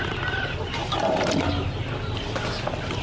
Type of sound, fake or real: real